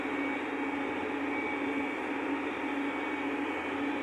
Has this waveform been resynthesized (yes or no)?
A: no